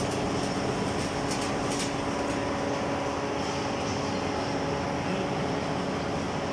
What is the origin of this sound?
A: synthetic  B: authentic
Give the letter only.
B